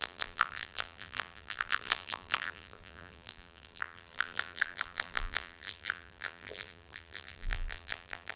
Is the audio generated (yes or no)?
yes